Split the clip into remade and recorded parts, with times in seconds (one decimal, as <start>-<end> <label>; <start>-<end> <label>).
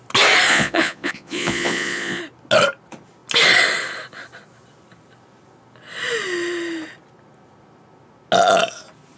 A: 0.0-0.5 recorded; 0.5-2.2 remade; 2.2-9.2 recorded